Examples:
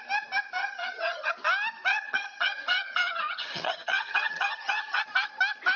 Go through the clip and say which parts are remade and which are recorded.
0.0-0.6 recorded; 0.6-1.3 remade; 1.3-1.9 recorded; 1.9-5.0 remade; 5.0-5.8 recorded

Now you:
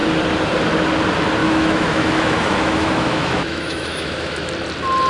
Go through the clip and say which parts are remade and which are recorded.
0.0-1.4 recorded; 1.4-4.5 remade; 4.5-5.1 recorded